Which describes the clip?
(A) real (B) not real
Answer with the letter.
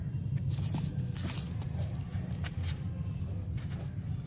A